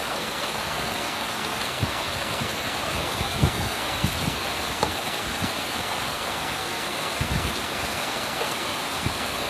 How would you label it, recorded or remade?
remade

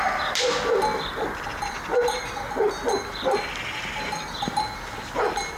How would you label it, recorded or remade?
recorded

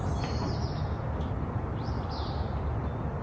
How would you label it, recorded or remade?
recorded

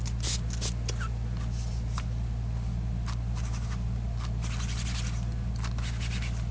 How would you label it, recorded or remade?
recorded